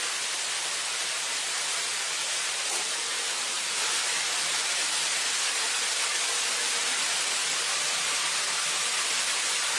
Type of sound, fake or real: real